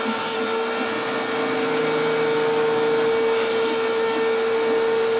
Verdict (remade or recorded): recorded